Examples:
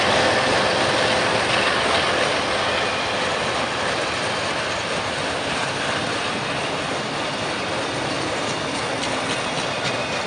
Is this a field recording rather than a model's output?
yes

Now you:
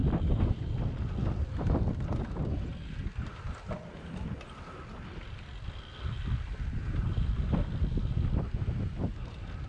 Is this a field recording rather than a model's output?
yes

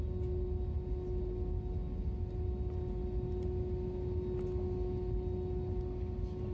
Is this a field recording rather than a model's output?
yes